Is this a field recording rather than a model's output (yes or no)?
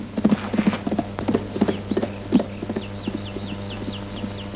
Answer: yes